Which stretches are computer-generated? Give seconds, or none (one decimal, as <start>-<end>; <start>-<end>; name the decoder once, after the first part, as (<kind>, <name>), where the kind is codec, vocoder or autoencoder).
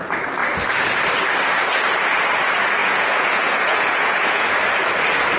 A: 2.8-4.5 (vocoder, Vocos)